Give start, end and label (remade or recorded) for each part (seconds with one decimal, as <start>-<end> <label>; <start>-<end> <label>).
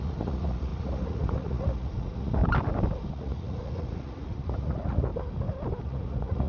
0.0-2.4 remade; 2.4-3.1 recorded; 3.1-5.1 remade; 5.1-5.8 recorded; 5.8-6.5 remade